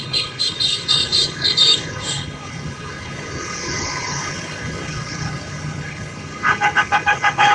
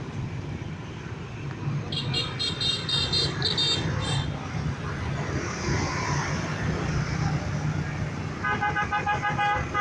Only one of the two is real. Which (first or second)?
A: second